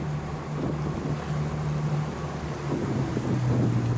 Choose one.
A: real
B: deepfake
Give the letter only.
A